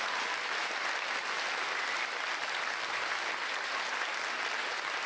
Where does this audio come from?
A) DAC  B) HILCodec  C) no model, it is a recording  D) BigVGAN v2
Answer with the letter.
C